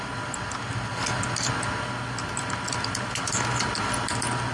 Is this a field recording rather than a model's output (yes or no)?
yes